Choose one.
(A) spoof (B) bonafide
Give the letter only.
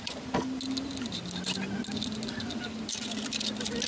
B